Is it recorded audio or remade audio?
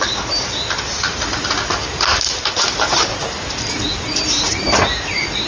recorded